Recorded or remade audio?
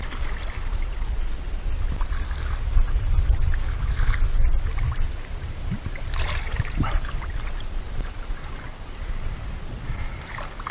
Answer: recorded